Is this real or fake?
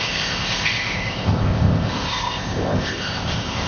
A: fake